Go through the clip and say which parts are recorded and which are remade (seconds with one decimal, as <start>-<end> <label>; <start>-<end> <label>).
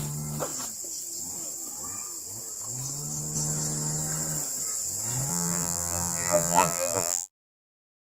0.0-5.3 recorded; 5.3-7.3 remade; 7.3-8.1 recorded